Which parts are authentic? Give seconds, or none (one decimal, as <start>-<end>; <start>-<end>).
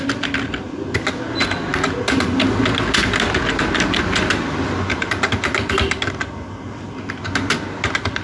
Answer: 0.0-8.2